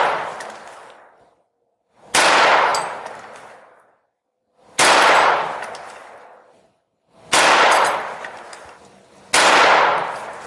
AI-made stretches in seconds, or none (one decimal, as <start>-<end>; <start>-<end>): none